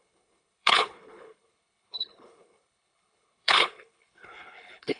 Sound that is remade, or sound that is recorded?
remade